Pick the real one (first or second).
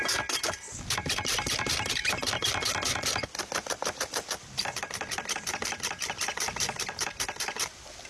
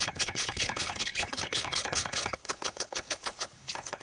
first